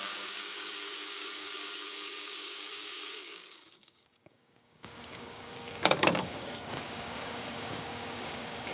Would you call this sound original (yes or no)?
no